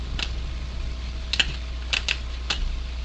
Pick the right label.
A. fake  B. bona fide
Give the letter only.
B